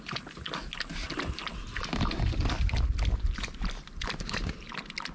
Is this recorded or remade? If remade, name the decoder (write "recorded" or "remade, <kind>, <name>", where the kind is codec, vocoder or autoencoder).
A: recorded